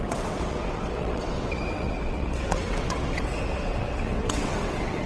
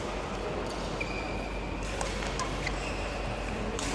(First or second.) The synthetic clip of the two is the first